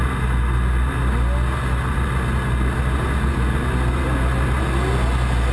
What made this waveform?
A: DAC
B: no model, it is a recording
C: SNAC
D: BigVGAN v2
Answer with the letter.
B